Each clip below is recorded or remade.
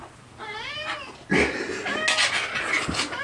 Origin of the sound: recorded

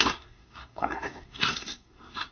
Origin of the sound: remade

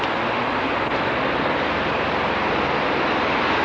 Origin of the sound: recorded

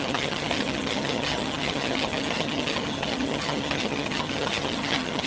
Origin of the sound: remade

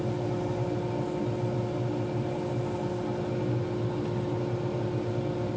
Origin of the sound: recorded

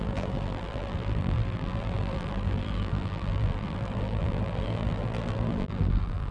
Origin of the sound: remade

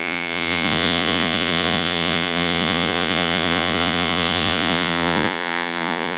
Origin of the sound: remade